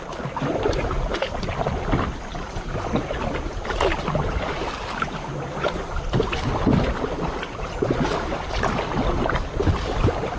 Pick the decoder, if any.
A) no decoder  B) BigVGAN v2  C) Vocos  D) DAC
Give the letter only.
A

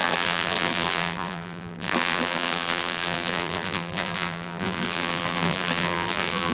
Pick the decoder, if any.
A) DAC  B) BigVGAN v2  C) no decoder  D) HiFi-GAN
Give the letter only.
B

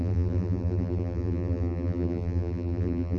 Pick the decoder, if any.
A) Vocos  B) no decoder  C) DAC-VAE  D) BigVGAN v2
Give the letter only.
D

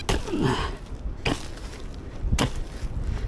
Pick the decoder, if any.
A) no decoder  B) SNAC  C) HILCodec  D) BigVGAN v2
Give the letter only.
A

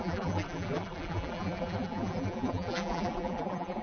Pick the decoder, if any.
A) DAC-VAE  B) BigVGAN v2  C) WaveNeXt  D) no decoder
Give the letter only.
B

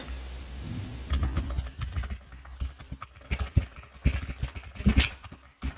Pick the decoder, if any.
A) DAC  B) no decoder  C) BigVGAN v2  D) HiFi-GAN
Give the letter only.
B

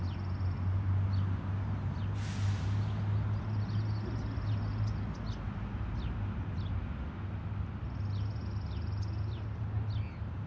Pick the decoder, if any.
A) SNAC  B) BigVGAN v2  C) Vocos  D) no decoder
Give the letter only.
D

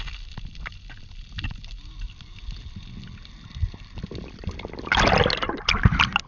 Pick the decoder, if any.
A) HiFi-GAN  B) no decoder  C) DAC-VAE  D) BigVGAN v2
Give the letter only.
B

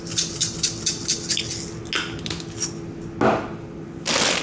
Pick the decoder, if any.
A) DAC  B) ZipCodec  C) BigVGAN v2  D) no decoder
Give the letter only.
D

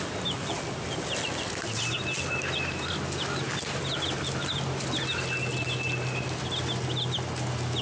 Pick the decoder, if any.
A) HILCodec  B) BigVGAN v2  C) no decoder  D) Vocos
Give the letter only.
C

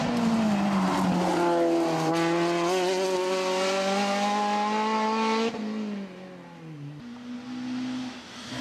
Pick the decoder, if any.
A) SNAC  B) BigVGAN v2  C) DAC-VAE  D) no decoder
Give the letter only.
D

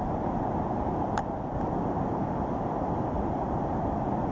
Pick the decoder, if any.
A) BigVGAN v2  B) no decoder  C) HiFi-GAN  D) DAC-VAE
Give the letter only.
A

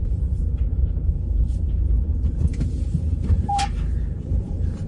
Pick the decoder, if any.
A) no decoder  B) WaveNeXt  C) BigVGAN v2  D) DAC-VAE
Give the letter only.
C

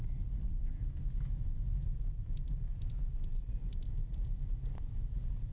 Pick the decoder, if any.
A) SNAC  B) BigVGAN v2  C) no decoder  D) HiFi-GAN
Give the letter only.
C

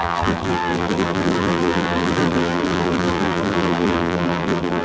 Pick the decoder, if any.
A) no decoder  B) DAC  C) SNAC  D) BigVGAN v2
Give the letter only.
D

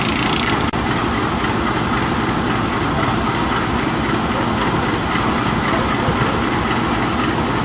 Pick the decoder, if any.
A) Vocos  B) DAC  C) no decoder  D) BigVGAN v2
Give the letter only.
C